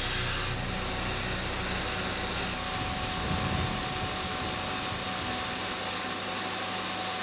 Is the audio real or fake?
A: real